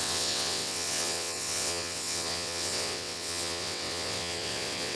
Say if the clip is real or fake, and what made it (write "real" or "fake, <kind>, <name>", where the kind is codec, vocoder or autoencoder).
fake, vocoder, WaveNeXt